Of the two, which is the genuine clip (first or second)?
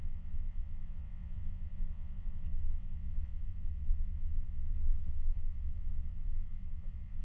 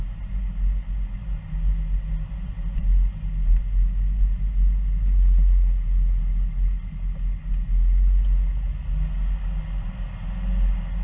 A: second